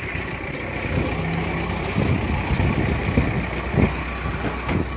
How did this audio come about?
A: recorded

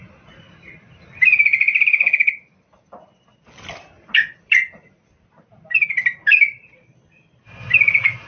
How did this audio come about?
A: recorded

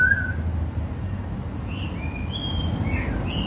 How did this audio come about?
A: recorded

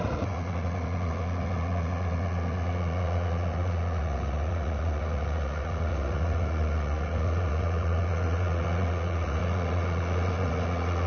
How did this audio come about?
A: remade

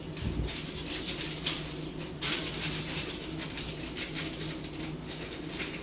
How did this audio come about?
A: recorded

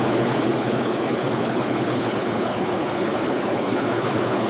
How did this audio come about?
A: remade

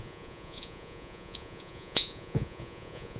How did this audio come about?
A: remade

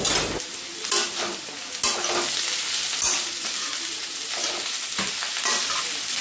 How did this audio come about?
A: recorded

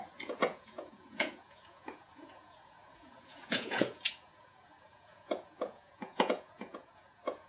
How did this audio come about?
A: remade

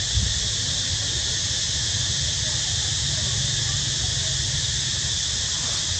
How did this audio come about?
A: recorded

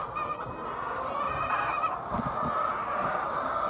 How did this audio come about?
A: recorded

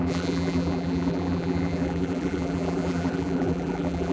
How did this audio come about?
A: remade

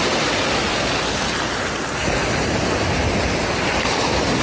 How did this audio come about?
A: recorded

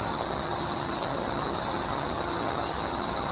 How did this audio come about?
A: remade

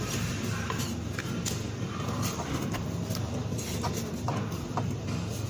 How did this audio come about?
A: recorded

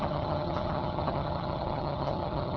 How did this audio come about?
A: remade